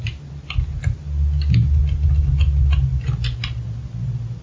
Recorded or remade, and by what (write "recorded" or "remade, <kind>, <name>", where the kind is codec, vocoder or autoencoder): recorded